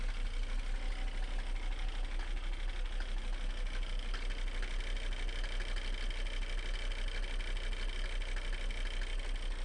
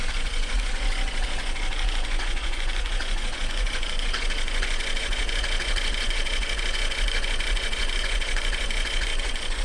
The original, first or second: first